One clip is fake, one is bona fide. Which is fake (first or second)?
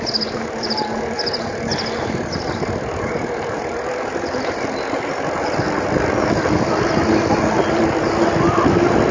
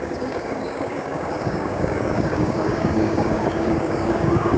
second